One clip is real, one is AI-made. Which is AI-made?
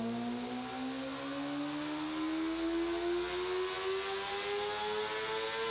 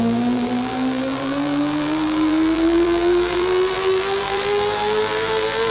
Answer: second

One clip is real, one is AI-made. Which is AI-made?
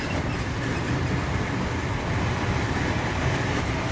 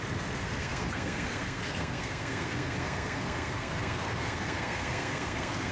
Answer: second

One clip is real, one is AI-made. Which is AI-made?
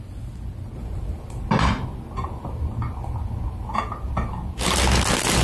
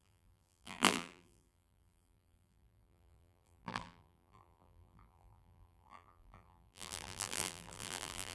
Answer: second